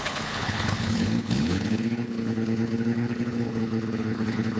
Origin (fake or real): fake